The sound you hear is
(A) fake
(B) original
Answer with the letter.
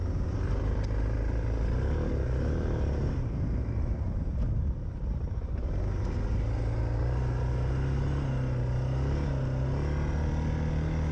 B